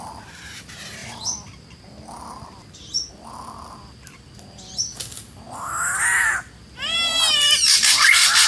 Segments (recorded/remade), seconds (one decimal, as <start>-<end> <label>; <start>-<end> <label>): 0.0-8.5 recorded